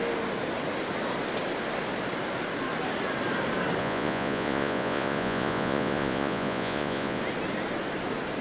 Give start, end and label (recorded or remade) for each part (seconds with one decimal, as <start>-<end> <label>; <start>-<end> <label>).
0.0-3.8 recorded; 3.8-7.2 remade; 7.2-8.4 recorded